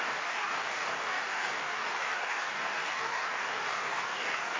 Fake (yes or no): yes